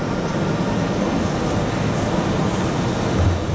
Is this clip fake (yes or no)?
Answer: no